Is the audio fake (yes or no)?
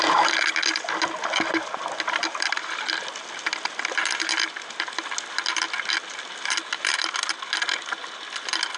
no